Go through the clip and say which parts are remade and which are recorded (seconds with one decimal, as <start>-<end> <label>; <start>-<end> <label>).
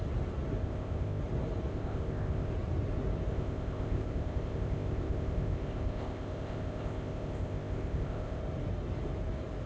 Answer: 0.0-0.6 recorded; 0.6-1.2 remade; 1.2-1.7 recorded; 1.7-2.5 remade; 2.5-3.3 recorded; 3.3-8.4 remade; 8.4-9.7 recorded